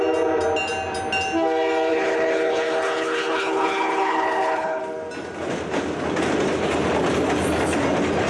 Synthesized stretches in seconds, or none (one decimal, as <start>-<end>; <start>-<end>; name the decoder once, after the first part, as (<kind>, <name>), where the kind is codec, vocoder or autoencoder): 1.9-4.8 (codec, HILCodec)